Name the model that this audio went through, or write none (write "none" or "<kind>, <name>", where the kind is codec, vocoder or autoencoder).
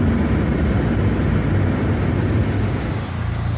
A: none